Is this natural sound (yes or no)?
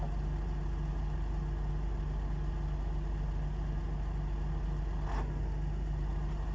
yes